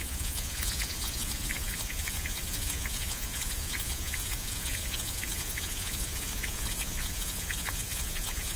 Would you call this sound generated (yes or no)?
yes